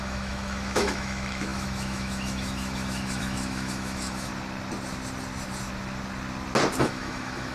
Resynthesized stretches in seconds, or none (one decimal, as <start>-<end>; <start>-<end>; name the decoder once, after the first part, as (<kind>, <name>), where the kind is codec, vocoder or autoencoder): 0.0-4.3 (autoencoder, DAC-VAE); 6.8-7.5